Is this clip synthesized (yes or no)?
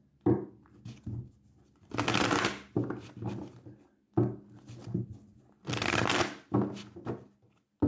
no